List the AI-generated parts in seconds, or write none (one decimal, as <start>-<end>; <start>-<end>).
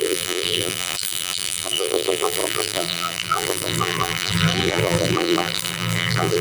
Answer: 0.0-6.4